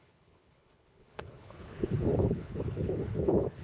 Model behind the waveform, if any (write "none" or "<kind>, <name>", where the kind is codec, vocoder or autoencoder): codec, HILCodec